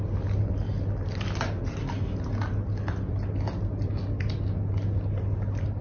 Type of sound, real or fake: real